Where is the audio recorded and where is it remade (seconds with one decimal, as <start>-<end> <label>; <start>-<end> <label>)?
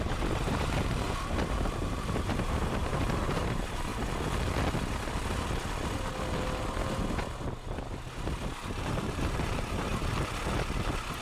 0.0-3.9 remade; 3.9-8.8 recorded; 8.8-9.9 remade; 9.9-11.2 recorded